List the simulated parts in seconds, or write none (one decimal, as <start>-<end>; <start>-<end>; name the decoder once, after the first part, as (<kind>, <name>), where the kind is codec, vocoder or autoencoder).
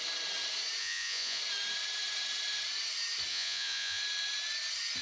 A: 0.8-1.4 (vocoder, Vocos); 3.3-4.0